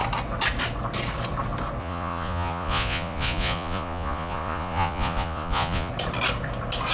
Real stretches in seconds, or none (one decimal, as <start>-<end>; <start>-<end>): 0.0-1.8; 5.9-6.9